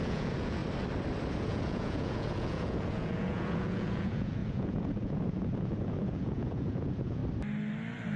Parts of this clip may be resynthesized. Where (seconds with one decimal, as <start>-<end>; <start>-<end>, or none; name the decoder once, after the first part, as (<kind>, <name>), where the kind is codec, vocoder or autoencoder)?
0.0-0.6 (vocoder, Vocos); 1.3-7.2